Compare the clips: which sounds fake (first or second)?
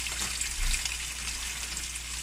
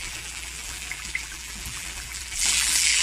second